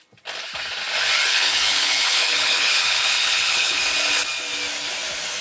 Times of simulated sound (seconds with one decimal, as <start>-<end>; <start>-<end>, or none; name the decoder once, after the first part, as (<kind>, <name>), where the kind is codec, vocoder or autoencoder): 1.3-3.8 (codec, HILCodec)